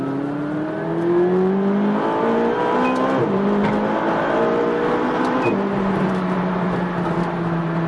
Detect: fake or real real